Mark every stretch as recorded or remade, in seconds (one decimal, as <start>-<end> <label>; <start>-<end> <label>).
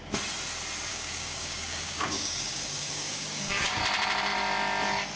0.0-0.9 recorded; 0.9-3.8 remade; 3.8-5.2 recorded